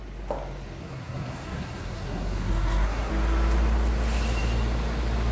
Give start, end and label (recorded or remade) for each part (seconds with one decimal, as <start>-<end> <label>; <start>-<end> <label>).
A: 0.0-0.8 recorded; 0.8-3.1 remade; 3.1-5.3 recorded